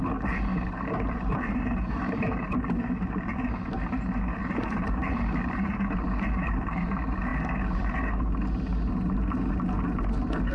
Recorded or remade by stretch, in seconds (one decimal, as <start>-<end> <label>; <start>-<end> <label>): 0.0-0.5 recorded; 0.5-2.6 remade; 2.6-4.4 recorded; 4.4-5.1 remade; 5.1-10.5 recorded